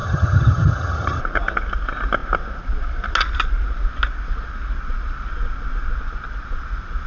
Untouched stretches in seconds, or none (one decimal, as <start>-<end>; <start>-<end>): 1.2-7.1